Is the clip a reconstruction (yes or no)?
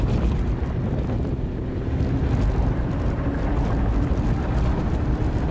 no